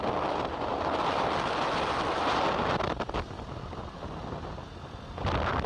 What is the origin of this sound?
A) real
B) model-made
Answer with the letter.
A